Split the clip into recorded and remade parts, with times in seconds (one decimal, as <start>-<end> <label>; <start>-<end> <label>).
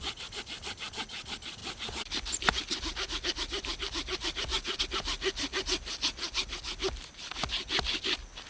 0.0-8.5 recorded